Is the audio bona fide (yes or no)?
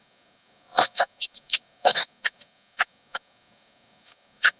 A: no